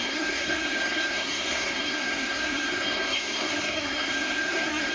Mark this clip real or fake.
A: fake